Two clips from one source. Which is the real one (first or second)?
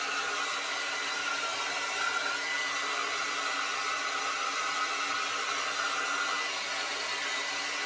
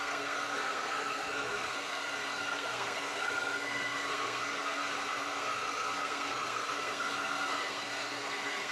first